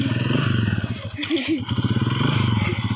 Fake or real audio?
real